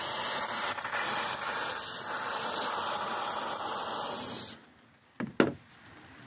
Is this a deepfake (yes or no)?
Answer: no